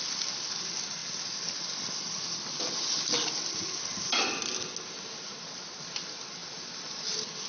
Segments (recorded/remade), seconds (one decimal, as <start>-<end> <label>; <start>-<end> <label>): 0.0-7.5 recorded